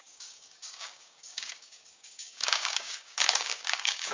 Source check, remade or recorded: remade